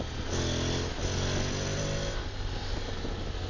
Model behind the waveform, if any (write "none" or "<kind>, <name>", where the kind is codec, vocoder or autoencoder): none